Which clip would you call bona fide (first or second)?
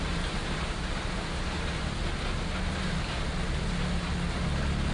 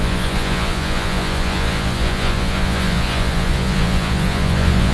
first